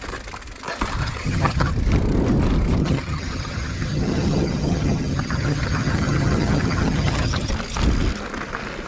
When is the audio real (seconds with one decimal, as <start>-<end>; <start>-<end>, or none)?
0.0-1.0; 1.7-2.8; 7.5-8.9